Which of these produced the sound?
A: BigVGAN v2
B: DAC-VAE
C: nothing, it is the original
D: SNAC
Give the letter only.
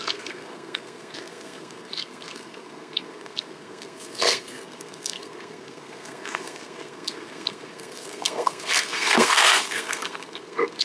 D